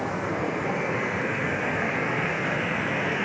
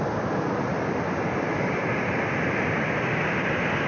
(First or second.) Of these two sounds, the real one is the second